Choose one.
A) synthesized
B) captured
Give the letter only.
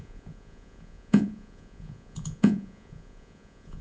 A